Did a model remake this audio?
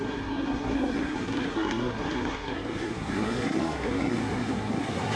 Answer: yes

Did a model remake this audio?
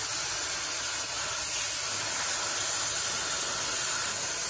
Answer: no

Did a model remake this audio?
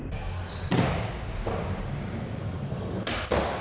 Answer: no